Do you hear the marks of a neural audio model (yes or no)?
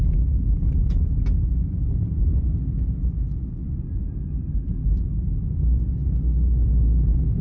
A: no